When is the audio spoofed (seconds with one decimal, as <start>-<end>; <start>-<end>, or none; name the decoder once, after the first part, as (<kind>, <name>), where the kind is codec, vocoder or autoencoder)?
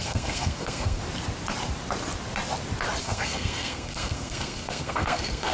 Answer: 0.0-1.0 (codec, SNAC); 3.0-5.5